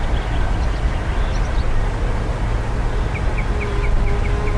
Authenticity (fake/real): real